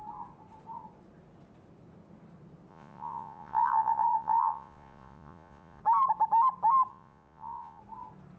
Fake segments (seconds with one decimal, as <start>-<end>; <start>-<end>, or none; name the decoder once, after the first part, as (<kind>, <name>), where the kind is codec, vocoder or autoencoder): 2.7-5.8 (vocoder, Vocos); 6.9-7.8

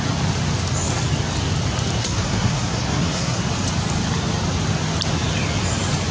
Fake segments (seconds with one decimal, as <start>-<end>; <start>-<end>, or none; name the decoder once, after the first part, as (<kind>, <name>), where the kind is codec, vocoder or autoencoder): 2.0-3.4 (codec, SNAC)

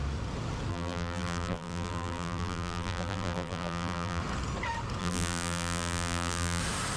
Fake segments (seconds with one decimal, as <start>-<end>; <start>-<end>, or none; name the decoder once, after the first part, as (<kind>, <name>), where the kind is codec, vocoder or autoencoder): 0.7-4.2 (vocoder, BigVGAN v2); 5.0-6.6

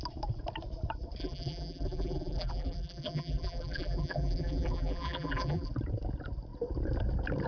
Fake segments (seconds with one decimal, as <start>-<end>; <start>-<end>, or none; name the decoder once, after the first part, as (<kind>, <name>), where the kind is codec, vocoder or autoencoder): 1.2-5.7 (vocoder, BigVGAN v2)